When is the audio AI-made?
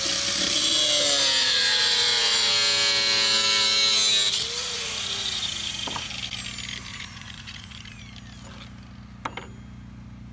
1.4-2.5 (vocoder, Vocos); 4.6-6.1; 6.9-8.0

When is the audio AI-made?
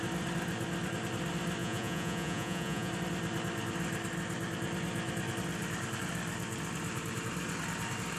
1.6-2.9 (vocoder, Vocos)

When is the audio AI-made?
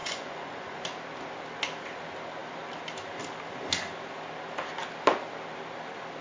0.0-0.8 (vocoder, Vocos)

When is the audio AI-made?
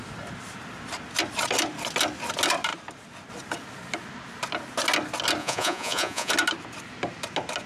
5.4-6.3 (vocoder, Vocos)